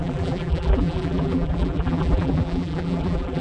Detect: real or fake fake